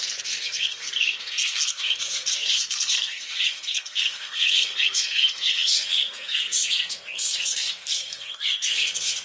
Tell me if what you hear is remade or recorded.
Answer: remade